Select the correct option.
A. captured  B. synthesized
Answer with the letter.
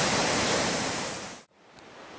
B